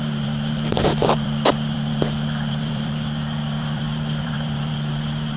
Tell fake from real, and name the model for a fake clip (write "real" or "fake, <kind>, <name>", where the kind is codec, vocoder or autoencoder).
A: fake, vocoder, BigVGAN v2